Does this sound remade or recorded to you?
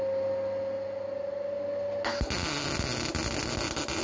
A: recorded